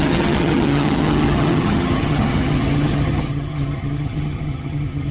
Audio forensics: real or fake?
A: fake